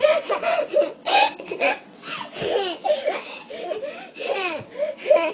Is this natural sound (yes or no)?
no